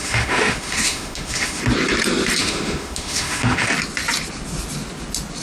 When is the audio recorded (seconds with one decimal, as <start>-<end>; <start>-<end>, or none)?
1.6-2.4; 3.7-5.4